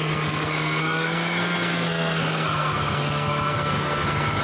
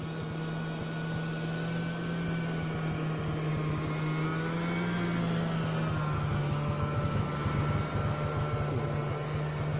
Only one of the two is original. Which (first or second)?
second